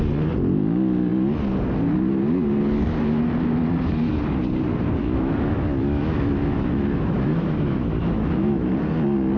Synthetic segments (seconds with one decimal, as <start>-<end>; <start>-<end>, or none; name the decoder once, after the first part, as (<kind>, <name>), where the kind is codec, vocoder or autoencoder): 5.0-8.7 (autoencoder, DAC-VAE)